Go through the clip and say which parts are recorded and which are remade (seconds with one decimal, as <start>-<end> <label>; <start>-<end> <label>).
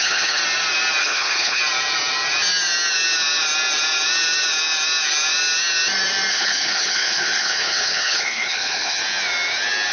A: 0.0-0.4 remade; 0.4-1.0 recorded; 1.0-1.6 remade; 1.6-6.3 recorded; 6.3-9.0 remade; 9.0-9.9 recorded